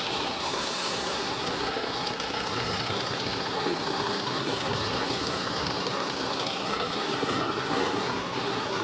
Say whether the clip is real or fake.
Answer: fake